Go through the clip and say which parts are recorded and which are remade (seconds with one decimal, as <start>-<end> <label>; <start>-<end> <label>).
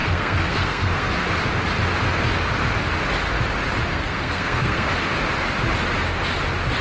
0.0-1.1 remade; 1.1-3.9 recorded; 3.9-4.9 remade; 4.9-6.8 recorded